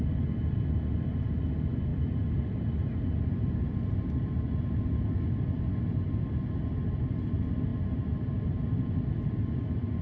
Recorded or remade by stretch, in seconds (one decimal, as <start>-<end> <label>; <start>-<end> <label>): 0.0-10.0 recorded